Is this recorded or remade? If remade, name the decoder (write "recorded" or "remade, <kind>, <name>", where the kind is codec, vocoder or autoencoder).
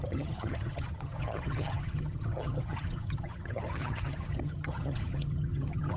remade, vocoder, HiFi-GAN